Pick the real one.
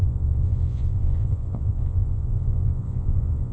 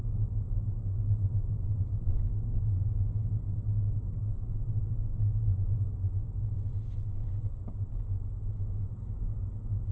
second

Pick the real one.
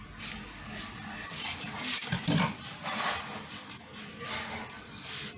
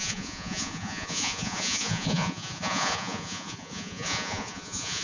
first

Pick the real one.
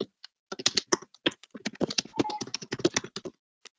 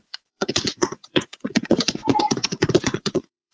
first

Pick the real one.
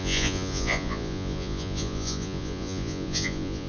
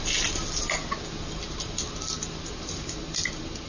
second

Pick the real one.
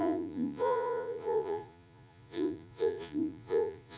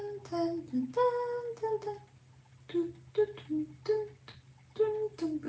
second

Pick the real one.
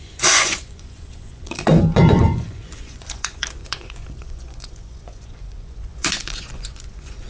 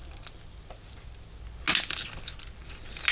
second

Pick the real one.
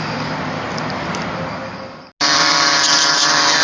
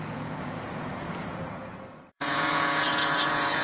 first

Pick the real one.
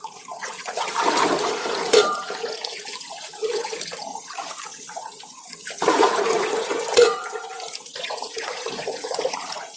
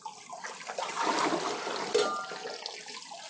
second